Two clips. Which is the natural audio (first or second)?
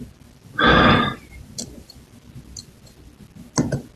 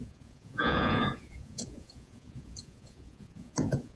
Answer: first